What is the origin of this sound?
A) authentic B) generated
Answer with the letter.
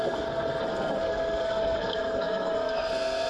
B